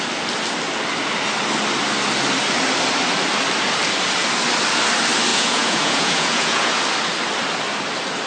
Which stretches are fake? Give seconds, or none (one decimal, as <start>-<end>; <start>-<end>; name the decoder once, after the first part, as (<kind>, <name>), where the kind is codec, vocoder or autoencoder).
5.3-6.8 (vocoder, Vocos)

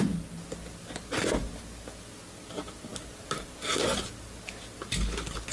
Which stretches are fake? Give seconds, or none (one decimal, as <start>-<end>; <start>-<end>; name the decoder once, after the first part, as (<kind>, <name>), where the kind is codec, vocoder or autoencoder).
none